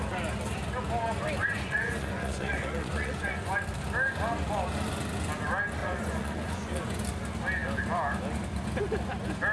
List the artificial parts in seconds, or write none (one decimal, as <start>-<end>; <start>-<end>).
1.4-3.5; 5.8-7.0